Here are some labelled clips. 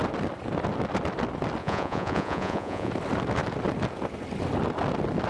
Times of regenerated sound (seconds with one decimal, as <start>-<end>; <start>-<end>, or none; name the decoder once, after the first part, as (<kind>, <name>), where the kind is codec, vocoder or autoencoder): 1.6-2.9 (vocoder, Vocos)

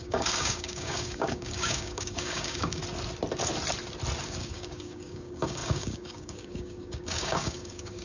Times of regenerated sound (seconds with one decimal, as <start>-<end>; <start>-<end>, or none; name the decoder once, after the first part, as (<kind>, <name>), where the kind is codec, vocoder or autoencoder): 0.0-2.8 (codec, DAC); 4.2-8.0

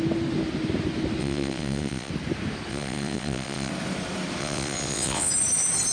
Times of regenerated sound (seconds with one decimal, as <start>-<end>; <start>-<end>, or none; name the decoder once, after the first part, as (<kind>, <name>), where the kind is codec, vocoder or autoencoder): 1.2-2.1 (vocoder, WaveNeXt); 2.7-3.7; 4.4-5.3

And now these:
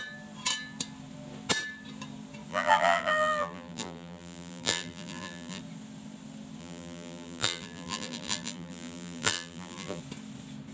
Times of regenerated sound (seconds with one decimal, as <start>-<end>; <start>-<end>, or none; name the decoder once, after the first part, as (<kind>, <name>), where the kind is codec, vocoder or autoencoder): 2.5-5.6 (vocoder, BigVGAN v2); 6.6-10.0

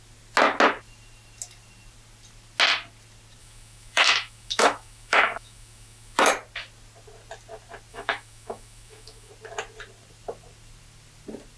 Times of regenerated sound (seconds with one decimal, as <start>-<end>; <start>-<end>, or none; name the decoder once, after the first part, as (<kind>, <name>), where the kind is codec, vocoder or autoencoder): 3.4-6.3 (autoencoder, DAC-VAE); 7.9-9.3

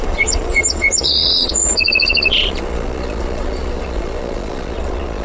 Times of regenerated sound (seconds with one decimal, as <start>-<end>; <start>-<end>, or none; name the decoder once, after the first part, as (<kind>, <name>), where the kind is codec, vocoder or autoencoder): 0.0-5.2 (vocoder, Vocos)

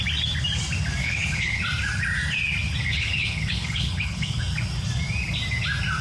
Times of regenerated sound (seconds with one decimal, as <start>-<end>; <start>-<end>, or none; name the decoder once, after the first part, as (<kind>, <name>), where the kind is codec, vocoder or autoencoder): 1.0-1.6 (codec, HILCodec); 2.9-4.4